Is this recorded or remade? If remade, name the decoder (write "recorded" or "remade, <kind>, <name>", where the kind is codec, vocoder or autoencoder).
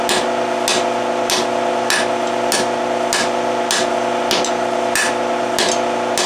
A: recorded